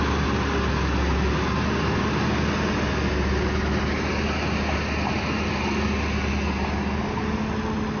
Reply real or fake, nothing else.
real